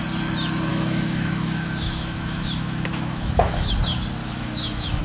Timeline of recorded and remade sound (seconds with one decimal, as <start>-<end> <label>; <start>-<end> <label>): 0.0-0.7 recorded; 0.7-3.7 remade; 3.7-4.2 recorded; 4.2-5.0 remade